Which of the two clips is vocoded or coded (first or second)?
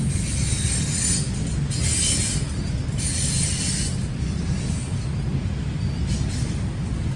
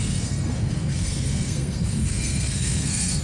second